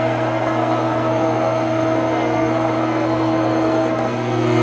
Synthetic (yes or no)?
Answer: yes